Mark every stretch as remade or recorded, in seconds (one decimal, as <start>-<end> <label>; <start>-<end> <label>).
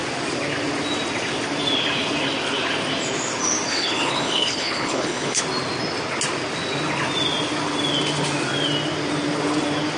0.0-3.7 recorded; 3.7-5.4 remade; 5.4-10.0 recorded